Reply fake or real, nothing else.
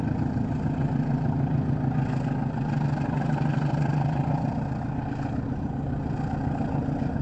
real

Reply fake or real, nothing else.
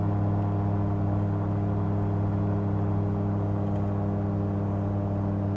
real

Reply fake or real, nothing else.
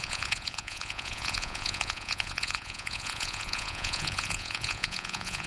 fake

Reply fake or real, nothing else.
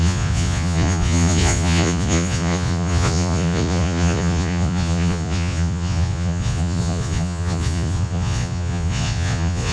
fake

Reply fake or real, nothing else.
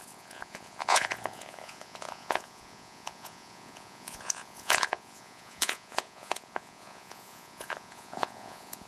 fake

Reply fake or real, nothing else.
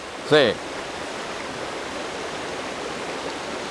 real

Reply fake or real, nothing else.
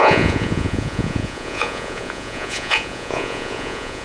fake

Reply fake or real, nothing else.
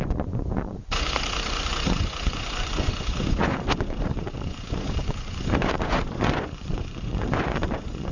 fake